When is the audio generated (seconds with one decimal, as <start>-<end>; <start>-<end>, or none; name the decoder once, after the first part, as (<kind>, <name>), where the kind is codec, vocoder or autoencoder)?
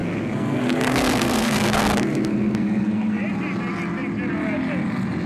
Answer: 0.0-3.2 (codec, SNAC)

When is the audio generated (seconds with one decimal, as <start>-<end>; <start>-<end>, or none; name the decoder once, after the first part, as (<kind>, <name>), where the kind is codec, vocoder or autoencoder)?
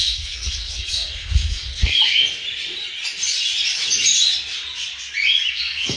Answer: 0.0-1.9 (codec, SNAC); 5.5-6.0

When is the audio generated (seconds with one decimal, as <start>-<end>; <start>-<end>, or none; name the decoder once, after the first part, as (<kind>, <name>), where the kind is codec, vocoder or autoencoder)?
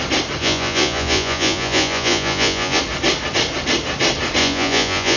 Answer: 0.4-2.8 (vocoder, Vocos); 4.4-5.2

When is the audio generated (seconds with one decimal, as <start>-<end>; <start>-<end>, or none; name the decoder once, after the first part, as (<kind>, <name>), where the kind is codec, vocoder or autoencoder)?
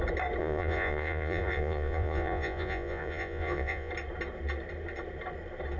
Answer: 0.4-3.9 (vocoder, Vocos)